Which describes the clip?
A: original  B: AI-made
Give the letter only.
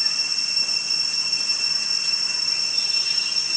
A